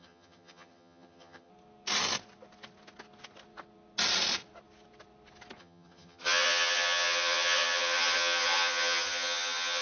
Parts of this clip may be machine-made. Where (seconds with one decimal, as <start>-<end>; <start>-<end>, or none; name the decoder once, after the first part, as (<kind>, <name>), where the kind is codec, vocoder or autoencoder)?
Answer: 0.0-1.5 (vocoder, HiFi-GAN); 5.6-9.8